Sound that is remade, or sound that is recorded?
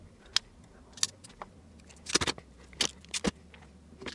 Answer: recorded